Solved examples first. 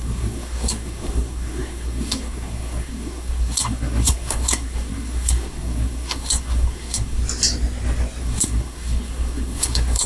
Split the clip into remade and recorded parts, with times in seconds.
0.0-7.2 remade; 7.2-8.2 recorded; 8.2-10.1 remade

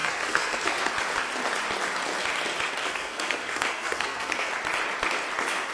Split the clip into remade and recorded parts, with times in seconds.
0.0-0.9 remade; 0.9-2.8 recorded; 2.8-4.5 remade; 4.5-5.7 recorded

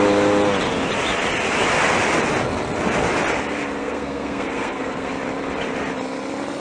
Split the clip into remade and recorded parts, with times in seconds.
0.0-3.8 recorded; 3.8-5.1 remade; 5.1-6.6 recorded

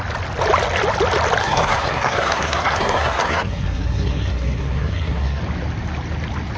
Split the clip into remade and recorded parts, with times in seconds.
0.0-1.4 recorded; 1.4-5.4 remade; 5.4-6.6 recorded

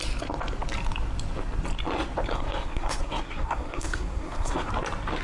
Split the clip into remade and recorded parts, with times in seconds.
0.0-2.3 recorded; 2.3-4.7 remade; 4.7-5.2 recorded

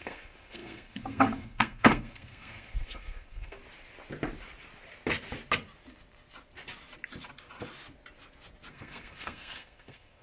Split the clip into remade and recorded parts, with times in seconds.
0.0-3.6 remade; 3.6-8.7 recorded; 8.7-10.2 remade

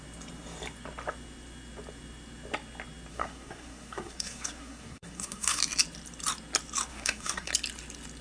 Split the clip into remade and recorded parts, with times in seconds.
0.0-3.1 recorded; 3.1-5.6 remade; 5.6-6.9 recorded; 6.9-7.5 remade; 7.5-8.2 recorded